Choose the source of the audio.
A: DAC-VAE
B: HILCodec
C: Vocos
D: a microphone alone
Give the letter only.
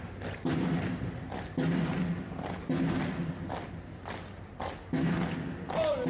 D